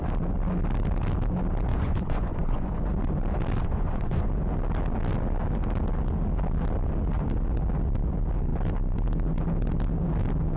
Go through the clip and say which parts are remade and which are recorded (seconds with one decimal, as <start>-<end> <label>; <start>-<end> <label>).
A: 0.0-1.7 recorded; 1.7-2.8 remade; 2.8-3.6 recorded; 3.6-4.3 remade; 4.3-10.6 recorded